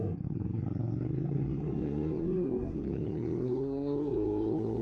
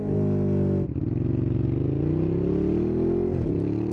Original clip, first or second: second